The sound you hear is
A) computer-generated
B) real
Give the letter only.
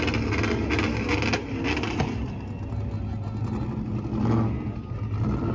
B